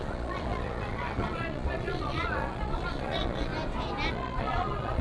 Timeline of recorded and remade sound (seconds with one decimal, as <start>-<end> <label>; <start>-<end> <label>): 0.0-3.5 remade; 3.5-4.1 recorded; 4.1-5.0 remade